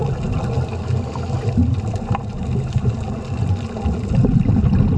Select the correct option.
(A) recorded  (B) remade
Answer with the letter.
A